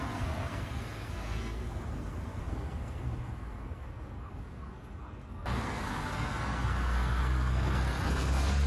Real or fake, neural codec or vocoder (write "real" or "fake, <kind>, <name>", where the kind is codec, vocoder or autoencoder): fake, codec, SNAC